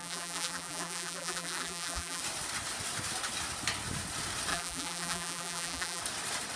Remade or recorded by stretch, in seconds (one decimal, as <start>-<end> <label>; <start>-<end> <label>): 0.0-2.2 remade; 2.2-4.5 recorded; 4.5-6.0 remade; 6.0-6.6 recorded